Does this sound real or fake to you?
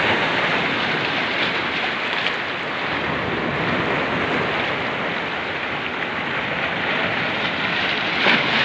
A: real